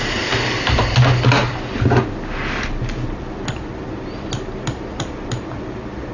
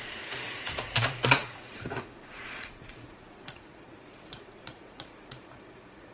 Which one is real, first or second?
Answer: first